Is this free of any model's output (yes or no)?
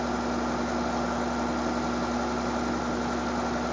yes